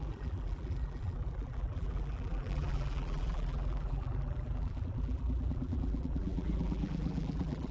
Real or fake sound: fake